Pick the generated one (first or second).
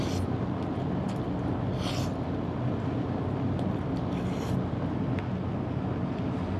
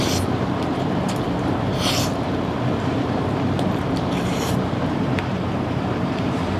second